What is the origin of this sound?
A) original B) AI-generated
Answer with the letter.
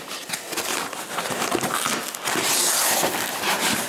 A